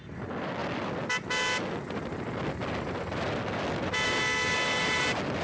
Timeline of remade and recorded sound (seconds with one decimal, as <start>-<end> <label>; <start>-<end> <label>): 0.0-5.4 recorded